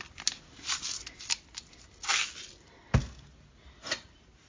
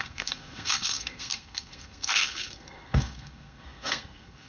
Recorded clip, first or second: first